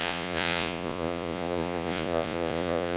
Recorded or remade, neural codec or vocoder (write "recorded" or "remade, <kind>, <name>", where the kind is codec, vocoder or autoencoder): remade, vocoder, Vocos